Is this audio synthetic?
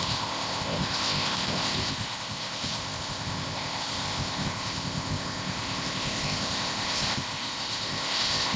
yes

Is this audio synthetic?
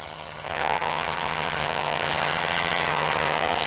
yes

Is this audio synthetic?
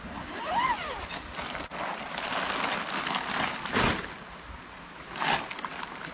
no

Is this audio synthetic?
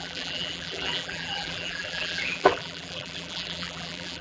yes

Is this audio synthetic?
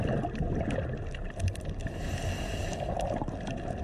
no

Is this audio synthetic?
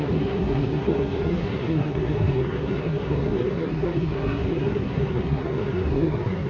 yes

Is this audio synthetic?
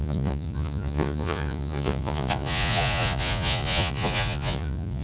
yes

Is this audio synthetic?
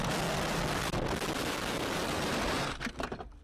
no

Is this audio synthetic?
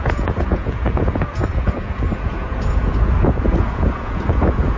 yes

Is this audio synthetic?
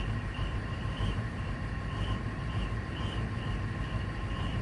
yes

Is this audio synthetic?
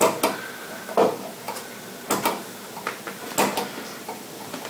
no